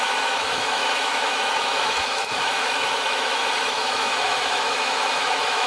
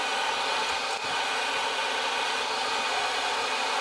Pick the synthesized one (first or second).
first